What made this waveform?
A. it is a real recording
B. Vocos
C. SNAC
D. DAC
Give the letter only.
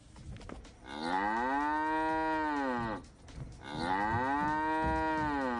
A